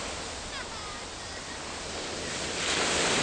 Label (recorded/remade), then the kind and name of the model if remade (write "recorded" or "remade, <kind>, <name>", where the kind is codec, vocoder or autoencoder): recorded